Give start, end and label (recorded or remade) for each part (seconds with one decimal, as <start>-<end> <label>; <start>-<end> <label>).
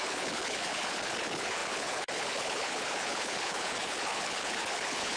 0.0-5.2 remade